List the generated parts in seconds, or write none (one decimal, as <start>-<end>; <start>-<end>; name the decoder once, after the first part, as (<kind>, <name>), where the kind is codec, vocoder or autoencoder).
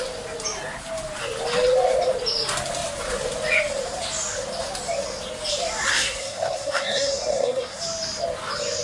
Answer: 5.9-7.8 (codec, SNAC)